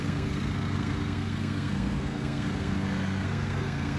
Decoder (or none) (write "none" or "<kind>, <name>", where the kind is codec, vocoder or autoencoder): codec, SNAC